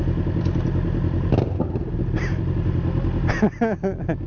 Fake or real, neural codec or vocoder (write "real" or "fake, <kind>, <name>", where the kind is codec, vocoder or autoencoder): real